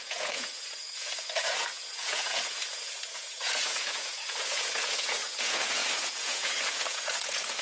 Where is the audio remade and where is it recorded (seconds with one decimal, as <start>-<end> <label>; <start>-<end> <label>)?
0.0-7.6 remade